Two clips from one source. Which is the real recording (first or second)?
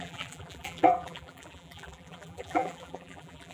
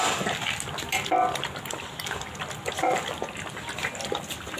second